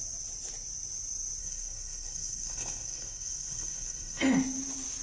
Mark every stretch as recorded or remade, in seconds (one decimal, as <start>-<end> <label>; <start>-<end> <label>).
0.0-1.4 recorded; 1.4-4.2 remade; 4.2-5.0 recorded